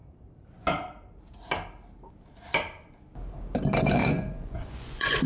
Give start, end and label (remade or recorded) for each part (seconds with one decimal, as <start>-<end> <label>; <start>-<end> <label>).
0.0-4.0 recorded; 4.0-5.3 remade